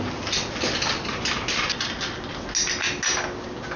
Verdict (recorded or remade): recorded